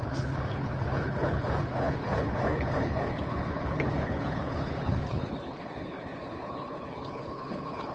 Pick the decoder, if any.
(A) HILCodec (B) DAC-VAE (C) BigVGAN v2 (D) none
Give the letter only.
A